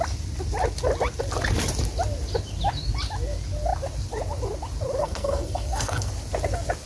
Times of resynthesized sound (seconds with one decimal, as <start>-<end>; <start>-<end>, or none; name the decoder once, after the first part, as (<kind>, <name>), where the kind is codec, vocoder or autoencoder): 5.0-6.1 (codec, SNAC)

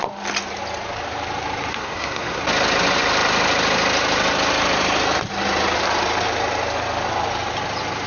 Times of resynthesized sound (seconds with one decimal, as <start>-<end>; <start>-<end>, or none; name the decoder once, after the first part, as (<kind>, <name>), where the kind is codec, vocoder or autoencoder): 1.7-2.4 (codec, SNAC)

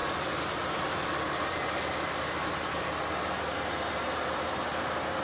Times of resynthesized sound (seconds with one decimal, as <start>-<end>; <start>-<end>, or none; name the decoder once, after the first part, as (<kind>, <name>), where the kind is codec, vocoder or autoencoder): 0.0-2.8 (vocoder, BigVGAN v2)